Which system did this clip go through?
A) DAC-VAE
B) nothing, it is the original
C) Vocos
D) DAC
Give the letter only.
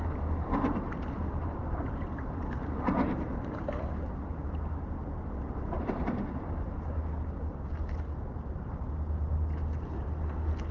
B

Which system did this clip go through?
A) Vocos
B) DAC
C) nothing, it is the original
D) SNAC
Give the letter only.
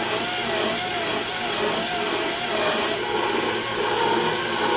C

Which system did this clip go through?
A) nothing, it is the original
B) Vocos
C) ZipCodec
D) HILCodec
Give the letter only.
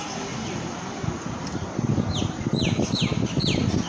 A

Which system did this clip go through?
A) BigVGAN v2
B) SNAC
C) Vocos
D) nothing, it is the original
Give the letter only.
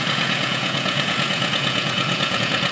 C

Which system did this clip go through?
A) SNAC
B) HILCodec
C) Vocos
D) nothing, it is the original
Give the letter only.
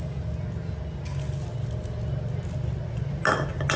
D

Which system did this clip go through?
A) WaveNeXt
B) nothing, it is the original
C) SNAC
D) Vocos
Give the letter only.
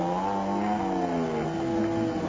B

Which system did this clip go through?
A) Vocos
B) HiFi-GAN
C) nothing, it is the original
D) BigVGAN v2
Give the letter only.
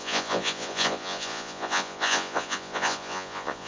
A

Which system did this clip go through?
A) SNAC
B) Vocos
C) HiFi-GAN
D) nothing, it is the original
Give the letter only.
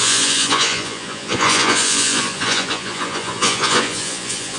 B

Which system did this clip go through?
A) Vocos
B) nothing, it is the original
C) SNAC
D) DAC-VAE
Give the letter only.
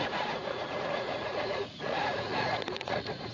A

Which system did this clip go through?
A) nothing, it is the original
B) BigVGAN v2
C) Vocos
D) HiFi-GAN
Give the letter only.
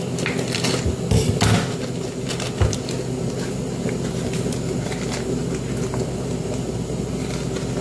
A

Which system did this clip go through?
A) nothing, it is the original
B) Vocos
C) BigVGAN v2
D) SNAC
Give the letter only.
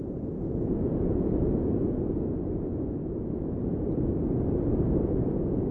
B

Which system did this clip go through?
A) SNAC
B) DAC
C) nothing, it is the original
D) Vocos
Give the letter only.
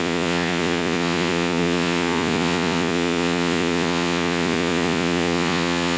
D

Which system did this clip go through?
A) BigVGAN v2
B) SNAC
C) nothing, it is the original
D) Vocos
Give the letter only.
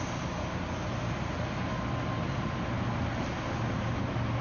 C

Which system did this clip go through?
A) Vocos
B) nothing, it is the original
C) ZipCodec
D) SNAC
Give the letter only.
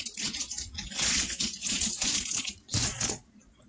A